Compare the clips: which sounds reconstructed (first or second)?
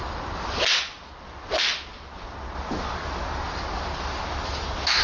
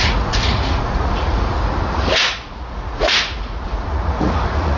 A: second